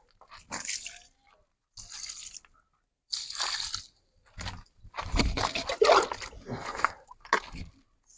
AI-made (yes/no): no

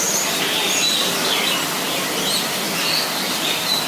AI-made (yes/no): no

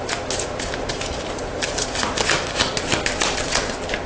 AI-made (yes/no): no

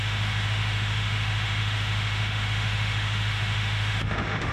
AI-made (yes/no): yes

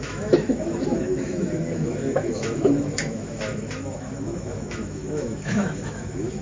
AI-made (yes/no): yes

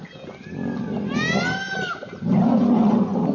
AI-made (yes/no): no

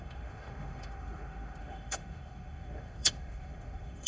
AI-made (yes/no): yes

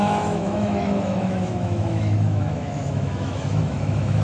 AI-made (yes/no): yes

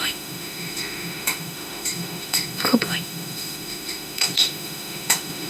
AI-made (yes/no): yes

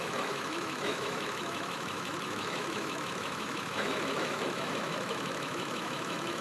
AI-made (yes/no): yes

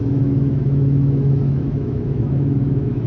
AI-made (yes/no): yes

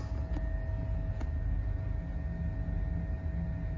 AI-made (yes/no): no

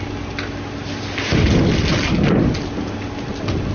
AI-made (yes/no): no